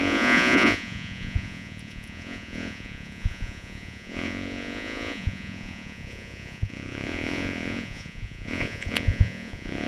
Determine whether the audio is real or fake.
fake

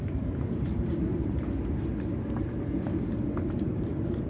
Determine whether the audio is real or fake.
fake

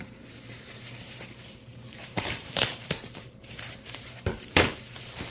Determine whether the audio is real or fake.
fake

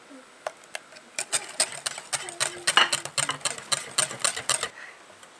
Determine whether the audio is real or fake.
real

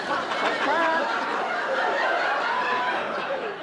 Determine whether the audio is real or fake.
fake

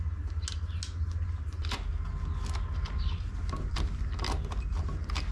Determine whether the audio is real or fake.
real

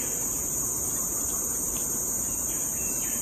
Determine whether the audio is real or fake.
fake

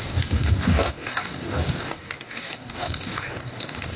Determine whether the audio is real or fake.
fake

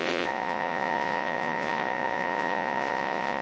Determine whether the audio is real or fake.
fake